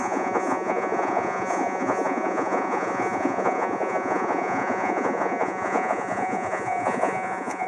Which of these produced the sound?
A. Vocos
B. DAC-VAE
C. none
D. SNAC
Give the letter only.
A